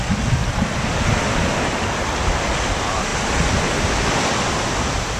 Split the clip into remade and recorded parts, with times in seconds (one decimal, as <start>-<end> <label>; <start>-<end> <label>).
0.0-5.2 recorded

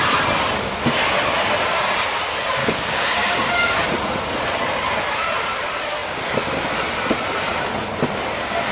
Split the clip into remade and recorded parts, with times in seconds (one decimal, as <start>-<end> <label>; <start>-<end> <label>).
0.0-2.6 recorded; 2.6-3.8 remade; 3.8-8.7 recorded

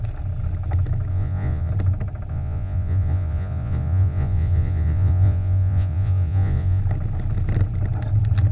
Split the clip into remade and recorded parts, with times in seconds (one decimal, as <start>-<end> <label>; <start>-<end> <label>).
0.0-1.1 recorded; 1.1-1.7 remade; 1.7-2.3 recorded; 2.3-6.8 remade; 6.8-8.5 recorded

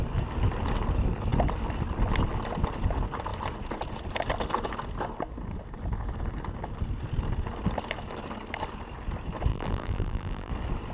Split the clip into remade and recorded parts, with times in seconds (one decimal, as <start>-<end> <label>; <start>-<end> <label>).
0.0-9.5 recorded; 9.5-10.5 remade; 10.5-10.9 recorded